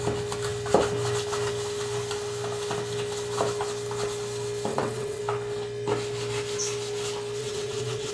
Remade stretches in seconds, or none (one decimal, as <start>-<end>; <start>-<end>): 4.7-5.2; 7.4-8.1